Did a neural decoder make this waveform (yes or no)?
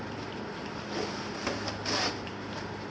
no